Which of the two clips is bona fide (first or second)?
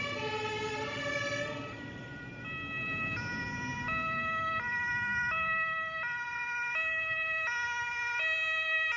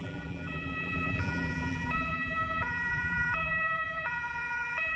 first